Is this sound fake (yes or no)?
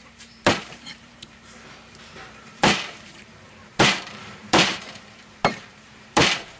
yes